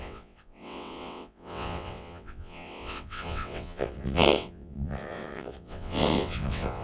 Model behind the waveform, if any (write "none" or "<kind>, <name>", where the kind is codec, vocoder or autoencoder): vocoder, WaveNeXt